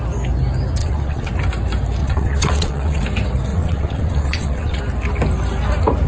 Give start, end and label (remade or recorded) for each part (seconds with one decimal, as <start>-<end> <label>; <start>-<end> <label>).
0.0-0.8 recorded; 0.8-1.3 remade; 1.3-2.0 recorded; 2.0-3.0 remade; 3.0-3.5 recorded; 3.5-4.8 remade; 4.8-6.1 recorded